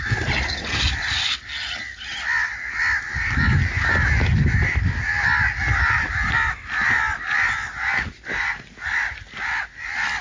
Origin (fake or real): real